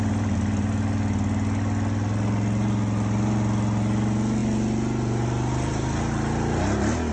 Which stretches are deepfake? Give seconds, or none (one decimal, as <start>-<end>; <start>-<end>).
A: none